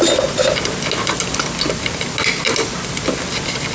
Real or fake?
real